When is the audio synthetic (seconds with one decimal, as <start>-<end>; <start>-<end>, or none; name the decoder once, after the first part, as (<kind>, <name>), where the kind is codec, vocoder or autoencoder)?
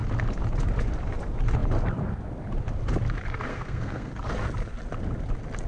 3.5-4.1 (codec, SNAC)